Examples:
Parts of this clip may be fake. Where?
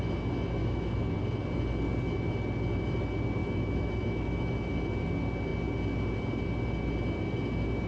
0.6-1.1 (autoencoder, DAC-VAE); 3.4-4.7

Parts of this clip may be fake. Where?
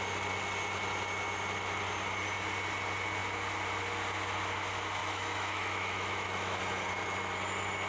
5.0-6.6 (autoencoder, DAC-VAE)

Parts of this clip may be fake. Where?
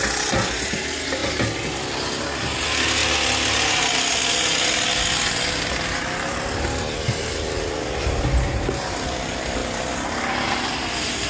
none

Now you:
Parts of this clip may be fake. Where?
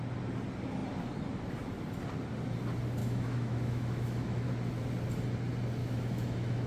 3.0-4.5 (autoencoder, DAC-VAE); 5.8-6.7